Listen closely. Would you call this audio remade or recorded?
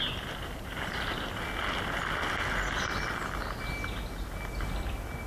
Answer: recorded